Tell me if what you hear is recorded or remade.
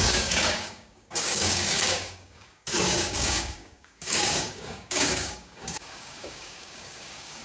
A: remade